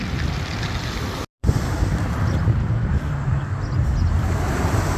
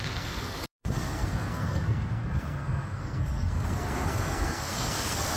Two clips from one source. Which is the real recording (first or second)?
first